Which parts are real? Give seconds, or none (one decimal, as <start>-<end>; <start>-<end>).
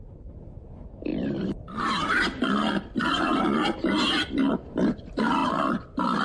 0.0-1.1; 3.4-5.4